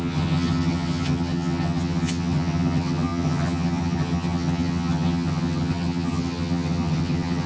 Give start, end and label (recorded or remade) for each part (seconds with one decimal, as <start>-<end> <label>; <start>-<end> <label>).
0.0-7.5 remade